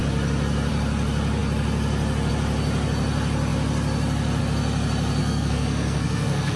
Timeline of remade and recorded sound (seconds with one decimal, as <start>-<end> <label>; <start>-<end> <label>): 0.0-5.2 recorded; 5.2-6.6 remade